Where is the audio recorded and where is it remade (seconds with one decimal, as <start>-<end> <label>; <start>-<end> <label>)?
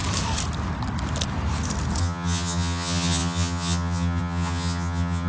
0.0-2.0 recorded; 2.0-5.3 remade